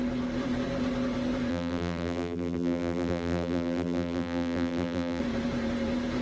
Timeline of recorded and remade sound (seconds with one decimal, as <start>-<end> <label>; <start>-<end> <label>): 0.0-1.5 recorded; 1.5-5.2 remade; 5.2-6.2 recorded